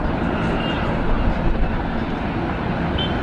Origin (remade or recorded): recorded